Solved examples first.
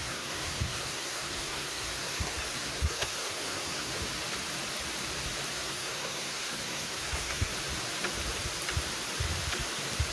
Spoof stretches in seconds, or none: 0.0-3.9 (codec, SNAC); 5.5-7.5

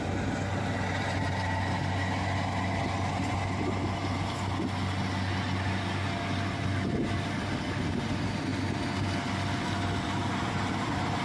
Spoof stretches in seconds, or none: none

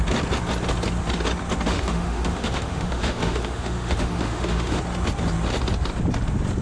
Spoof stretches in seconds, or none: 1.7-4.8 (autoencoder, DAC-VAE)

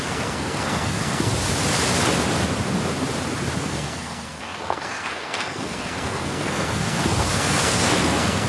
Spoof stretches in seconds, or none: 0.0-1.3 (codec, SNAC); 3.6-8.5